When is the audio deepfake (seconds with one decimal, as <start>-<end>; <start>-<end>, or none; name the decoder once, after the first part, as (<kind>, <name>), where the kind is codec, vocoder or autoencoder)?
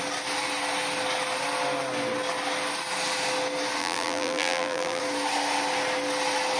3.8-5.0 (vocoder, BigVGAN v2)